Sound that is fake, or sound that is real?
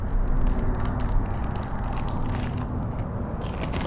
real